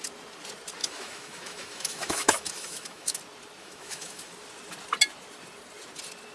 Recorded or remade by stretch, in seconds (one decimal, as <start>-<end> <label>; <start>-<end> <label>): 0.0-0.8 recorded; 0.8-3.2 remade; 3.2-3.6 recorded; 3.6-4.3 remade; 4.3-6.3 recorded